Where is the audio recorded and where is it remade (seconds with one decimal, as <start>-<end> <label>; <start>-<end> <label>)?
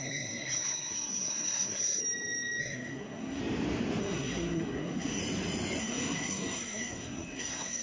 0.0-2.0 remade; 2.0-2.6 recorded; 2.6-3.4 remade; 3.4-4.0 recorded; 4.0-5.2 remade; 5.2-5.8 recorded; 5.8-7.8 remade